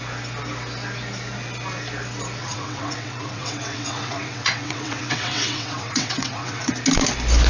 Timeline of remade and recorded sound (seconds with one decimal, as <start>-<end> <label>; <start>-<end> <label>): 0.0-2.4 recorded; 2.4-6.7 remade; 6.7-7.5 recorded

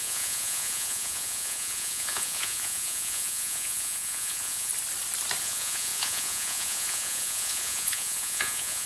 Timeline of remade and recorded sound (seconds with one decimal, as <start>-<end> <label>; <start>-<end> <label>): 0.0-4.7 remade; 4.7-5.4 recorded; 5.4-8.9 remade

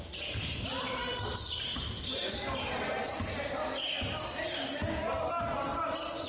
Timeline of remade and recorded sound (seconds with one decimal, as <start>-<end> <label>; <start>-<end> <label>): 0.0-6.3 recorded

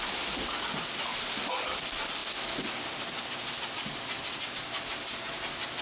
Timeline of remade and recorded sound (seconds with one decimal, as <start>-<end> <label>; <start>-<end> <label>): 0.0-5.8 recorded

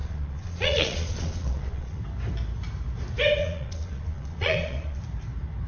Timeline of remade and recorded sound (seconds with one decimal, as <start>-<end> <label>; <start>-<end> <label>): 0.0-2.0 remade; 2.0-3.4 recorded; 3.4-5.0 remade; 5.0-5.7 recorded

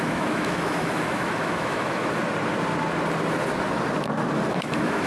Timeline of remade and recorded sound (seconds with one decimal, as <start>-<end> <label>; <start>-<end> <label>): 0.0-2.2 remade; 2.2-4.5 recorded; 4.5-5.1 remade

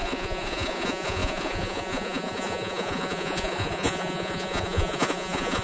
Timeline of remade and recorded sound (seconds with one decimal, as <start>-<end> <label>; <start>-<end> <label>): 0.0-5.6 remade